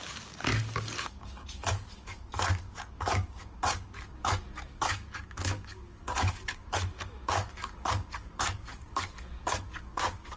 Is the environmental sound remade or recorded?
remade